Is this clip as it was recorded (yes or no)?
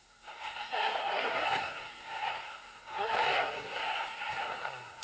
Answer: no